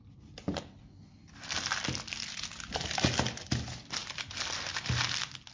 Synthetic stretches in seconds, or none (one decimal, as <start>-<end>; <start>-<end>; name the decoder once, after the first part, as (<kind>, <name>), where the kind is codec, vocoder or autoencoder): none